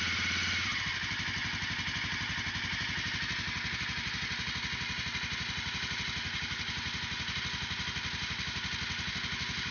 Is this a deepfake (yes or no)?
no